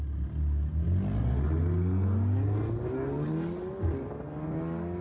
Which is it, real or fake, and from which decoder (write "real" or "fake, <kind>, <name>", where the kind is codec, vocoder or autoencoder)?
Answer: real